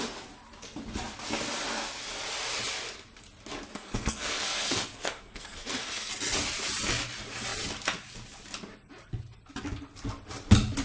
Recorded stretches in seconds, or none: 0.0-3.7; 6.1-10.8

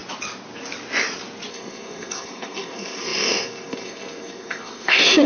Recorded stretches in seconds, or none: 0.0-1.5